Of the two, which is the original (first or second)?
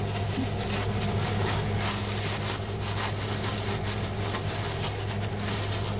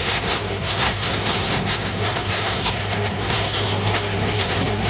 first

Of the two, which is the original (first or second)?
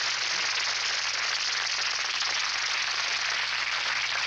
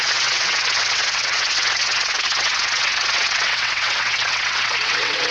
first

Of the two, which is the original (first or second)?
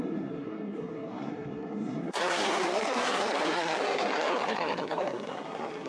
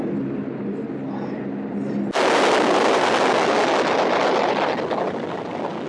second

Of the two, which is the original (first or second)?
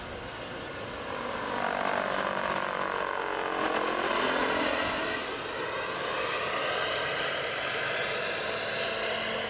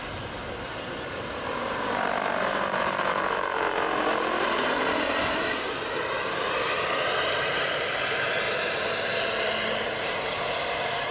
first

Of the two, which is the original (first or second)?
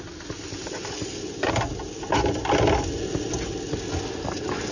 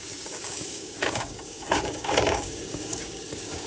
first